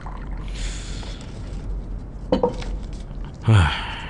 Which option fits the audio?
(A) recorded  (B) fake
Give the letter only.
A